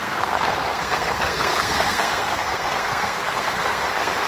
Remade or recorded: remade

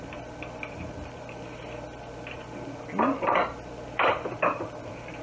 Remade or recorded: recorded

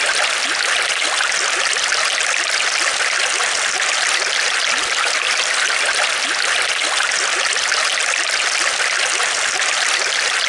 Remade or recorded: recorded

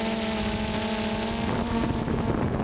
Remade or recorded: recorded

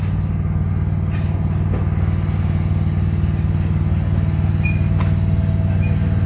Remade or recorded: recorded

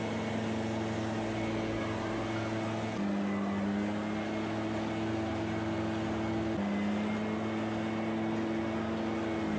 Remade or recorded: recorded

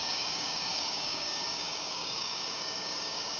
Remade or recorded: remade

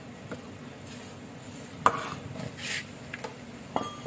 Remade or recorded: recorded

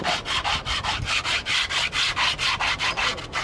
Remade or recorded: recorded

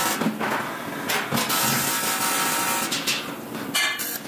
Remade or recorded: recorded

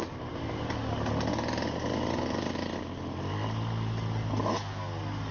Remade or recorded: recorded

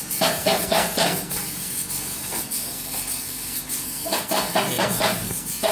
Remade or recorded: remade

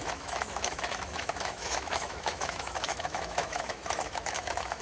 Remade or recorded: remade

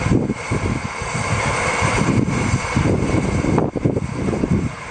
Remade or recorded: recorded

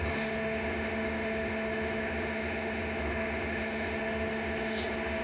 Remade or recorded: remade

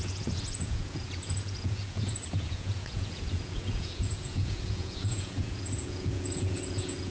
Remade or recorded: remade